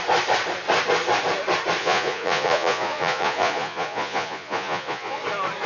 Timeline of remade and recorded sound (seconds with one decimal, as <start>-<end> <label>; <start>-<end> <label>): 0.0-1.8 recorded; 1.8-5.2 remade; 5.2-5.7 recorded